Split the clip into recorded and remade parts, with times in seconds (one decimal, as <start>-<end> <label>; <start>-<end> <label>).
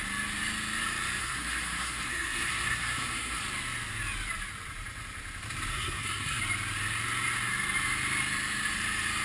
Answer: 0.0-1.2 recorded; 1.2-3.4 remade; 3.4-5.7 recorded; 5.7-6.4 remade; 6.4-9.2 recorded